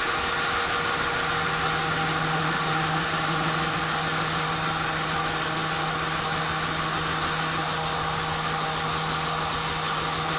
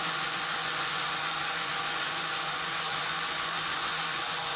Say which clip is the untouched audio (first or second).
first